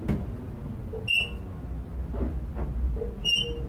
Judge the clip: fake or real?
real